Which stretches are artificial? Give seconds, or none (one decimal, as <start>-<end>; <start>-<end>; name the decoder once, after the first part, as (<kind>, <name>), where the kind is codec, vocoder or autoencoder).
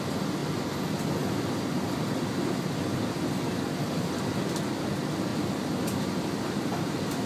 none